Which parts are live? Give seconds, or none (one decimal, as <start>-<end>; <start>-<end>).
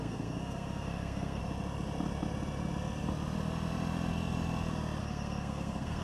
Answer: 1.4-5.0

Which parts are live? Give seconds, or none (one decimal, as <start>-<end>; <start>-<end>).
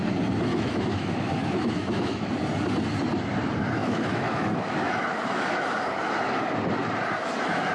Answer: 0.0-0.5; 2.3-3.8; 5.5-7.7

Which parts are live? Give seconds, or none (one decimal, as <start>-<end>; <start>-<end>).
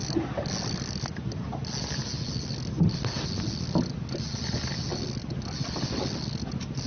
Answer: 0.0-6.9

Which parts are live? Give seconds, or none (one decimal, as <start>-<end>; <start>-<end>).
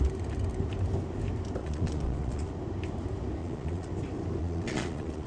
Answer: 0.0-1.6; 2.5-3.4; 3.9-4.4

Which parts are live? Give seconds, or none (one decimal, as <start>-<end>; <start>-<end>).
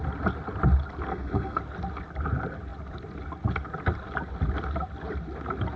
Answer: 0.0-1.1; 1.6-5.8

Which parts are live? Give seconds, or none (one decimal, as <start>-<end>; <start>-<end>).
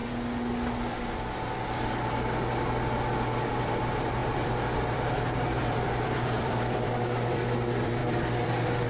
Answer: 0.0-3.5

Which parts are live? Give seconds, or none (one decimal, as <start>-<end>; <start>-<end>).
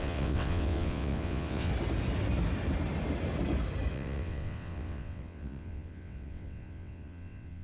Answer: 1.7-3.9